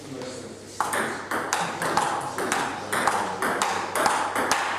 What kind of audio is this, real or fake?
real